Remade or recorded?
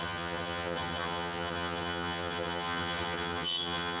remade